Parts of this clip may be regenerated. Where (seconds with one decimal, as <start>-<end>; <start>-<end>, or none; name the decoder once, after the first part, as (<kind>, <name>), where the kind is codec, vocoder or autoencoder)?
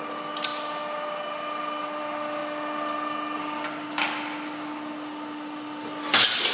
none